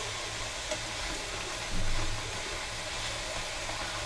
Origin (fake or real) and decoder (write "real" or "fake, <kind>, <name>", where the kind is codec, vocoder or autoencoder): real